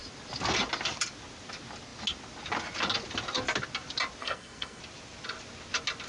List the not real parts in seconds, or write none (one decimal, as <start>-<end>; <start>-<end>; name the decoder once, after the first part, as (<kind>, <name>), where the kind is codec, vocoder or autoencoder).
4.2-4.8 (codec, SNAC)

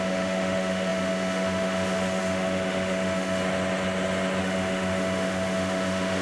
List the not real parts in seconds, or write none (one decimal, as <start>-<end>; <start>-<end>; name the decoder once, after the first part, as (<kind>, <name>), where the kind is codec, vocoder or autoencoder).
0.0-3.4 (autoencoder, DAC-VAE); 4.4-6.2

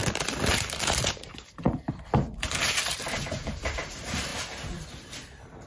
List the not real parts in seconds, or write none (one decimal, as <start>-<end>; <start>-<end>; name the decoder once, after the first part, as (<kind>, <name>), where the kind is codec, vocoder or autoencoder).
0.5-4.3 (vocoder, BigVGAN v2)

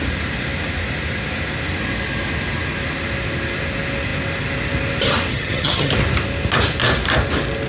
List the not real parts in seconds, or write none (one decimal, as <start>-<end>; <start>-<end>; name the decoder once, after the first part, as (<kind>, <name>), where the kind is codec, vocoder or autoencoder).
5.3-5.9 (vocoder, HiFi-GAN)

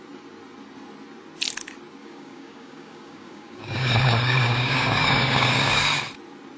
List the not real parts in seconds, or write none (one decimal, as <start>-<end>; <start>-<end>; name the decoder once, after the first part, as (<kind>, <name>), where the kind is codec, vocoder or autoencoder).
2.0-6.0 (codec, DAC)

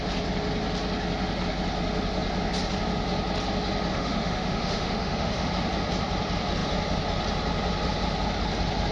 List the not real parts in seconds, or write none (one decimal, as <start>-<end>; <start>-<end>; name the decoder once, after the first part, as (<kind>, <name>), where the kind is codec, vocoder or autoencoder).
3.9-5.5 (autoencoder, DAC-VAE)

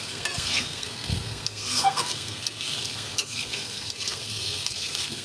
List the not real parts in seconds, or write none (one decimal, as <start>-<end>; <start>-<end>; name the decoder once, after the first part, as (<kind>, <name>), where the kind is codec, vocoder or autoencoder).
0.0-5.2 (codec, SNAC)